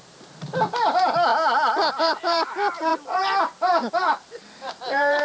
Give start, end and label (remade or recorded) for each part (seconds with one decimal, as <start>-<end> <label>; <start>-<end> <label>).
0.0-1.3 remade; 1.3-1.9 recorded; 1.9-5.2 remade

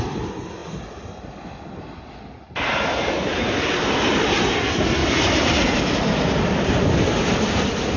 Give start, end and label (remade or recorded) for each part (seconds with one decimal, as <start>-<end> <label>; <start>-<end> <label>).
0.0-5.0 recorded; 5.0-5.8 remade; 5.8-8.0 recorded

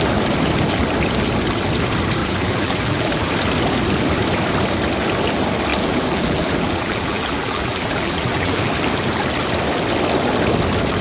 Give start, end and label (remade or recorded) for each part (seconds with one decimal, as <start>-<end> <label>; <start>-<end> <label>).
0.0-2.2 recorded; 2.2-3.3 remade; 3.3-5.7 recorded; 5.7-8.7 remade; 8.7-11.0 recorded

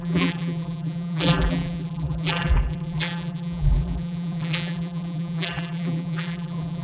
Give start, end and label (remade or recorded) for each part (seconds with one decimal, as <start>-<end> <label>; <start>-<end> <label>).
0.0-6.8 remade